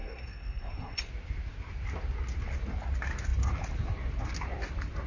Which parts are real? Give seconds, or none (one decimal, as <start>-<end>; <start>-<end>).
1.0-5.1